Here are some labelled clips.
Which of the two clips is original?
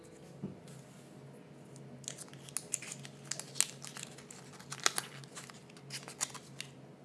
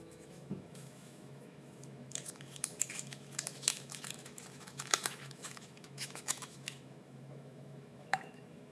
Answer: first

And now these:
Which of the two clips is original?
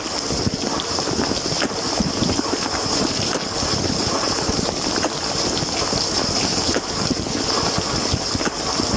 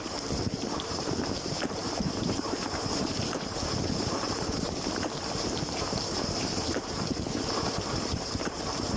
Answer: first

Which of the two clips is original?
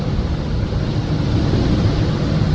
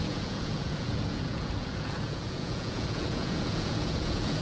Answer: first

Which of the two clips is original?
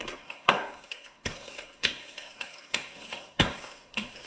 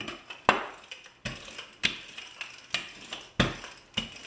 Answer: second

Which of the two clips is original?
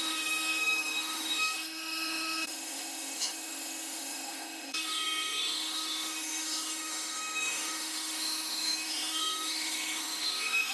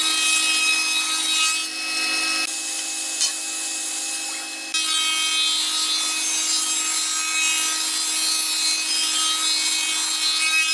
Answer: second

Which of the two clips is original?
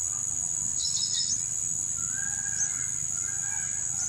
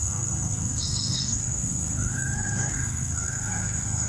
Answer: first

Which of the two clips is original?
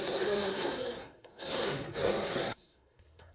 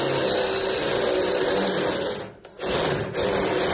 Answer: second